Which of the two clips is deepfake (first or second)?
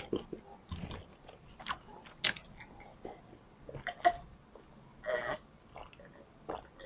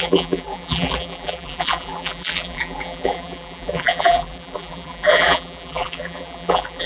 second